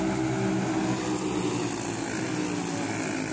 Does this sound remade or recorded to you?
recorded